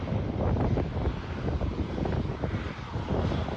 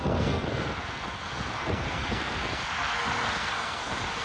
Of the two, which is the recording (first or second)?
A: first